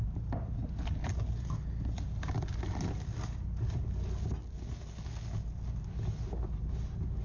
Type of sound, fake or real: real